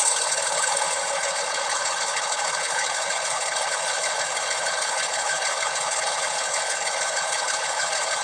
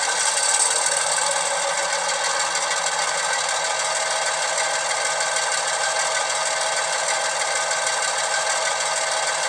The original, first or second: second